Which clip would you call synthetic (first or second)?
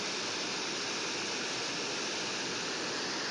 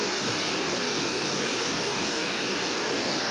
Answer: second